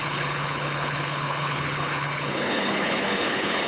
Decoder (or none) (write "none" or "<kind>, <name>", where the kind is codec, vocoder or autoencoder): codec, HILCodec